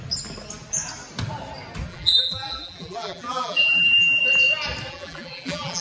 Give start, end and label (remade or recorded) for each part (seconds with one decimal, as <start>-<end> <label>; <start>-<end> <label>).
0.0-1.9 recorded; 1.9-4.2 remade; 4.2-4.9 recorded; 4.9-5.8 remade